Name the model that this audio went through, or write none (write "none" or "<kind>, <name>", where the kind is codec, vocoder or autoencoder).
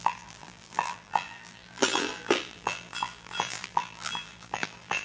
vocoder, BigVGAN v2